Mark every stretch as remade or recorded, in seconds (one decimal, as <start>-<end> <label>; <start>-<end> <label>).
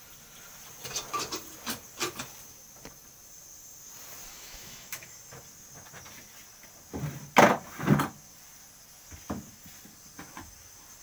0.0-4.3 recorded; 4.3-5.1 remade; 5.1-11.0 recorded